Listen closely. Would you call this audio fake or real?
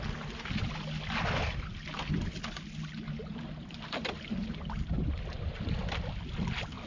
real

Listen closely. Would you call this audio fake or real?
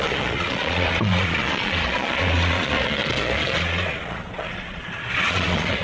fake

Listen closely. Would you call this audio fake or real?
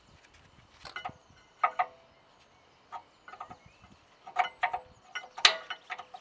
real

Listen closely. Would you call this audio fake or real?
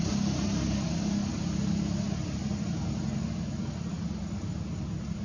real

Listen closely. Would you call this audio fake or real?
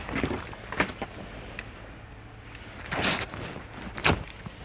real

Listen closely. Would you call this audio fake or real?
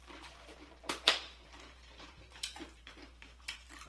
fake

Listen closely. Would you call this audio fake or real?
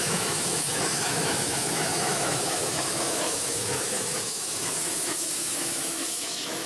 fake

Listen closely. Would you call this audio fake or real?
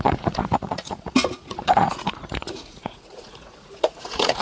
fake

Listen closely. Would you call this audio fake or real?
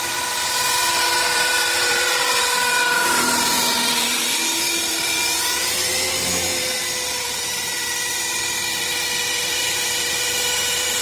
fake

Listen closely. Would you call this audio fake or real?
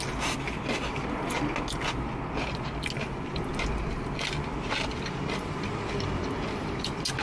real